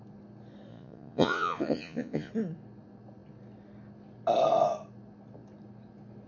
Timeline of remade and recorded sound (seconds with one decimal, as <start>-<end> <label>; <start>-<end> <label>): 0.0-0.7 recorded; 0.7-2.3 remade; 2.3-6.3 recorded